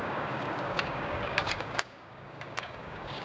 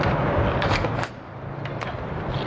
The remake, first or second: first